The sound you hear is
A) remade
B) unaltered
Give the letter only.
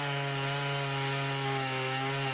B